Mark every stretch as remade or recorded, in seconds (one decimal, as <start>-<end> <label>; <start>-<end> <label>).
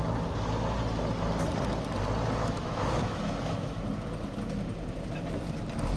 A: 0.0-2.4 recorded; 2.4-3.8 remade; 3.8-6.0 recorded